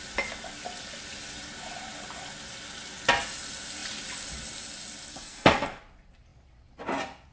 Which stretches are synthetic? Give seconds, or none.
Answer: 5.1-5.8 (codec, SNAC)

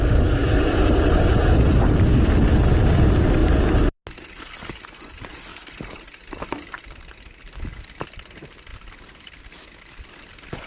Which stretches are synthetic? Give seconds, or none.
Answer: none